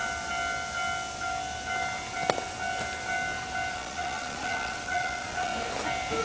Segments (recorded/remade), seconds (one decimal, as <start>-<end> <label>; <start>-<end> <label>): 0.0-3.7 recorded; 3.7-5.5 remade; 5.5-6.2 recorded